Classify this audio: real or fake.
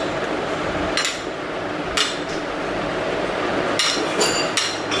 real